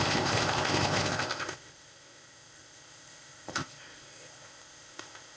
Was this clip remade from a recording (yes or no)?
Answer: yes